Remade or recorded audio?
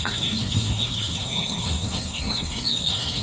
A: remade